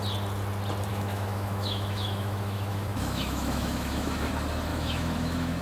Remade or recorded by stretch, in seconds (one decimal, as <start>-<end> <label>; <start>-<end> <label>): 0.0-0.9 recorded; 0.9-4.3 remade; 4.3-4.7 recorded; 4.7-5.6 remade